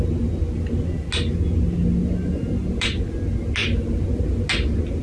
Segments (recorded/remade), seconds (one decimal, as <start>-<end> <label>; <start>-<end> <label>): 0.0-5.0 recorded